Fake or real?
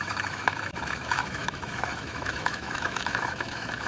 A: fake